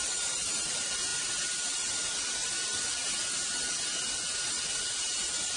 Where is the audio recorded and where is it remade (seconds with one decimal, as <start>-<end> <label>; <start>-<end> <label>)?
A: 0.0-5.6 recorded